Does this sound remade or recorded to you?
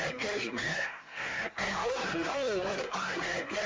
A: remade